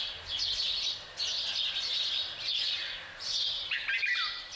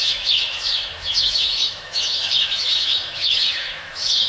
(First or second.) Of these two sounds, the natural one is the first